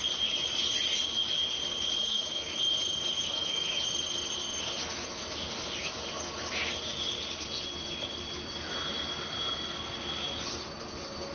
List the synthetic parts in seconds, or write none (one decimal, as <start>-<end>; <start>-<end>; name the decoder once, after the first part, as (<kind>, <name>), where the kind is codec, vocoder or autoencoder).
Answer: 2.0-2.6 (autoencoder, DAC-VAE); 3.2-3.8